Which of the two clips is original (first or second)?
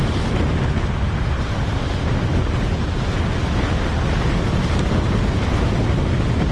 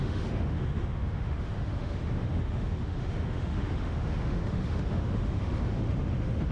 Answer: first